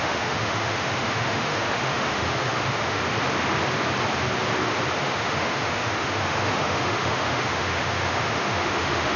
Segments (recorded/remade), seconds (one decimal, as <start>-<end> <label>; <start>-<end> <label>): 0.0-3.0 remade; 3.0-5.0 recorded; 5.0-9.2 remade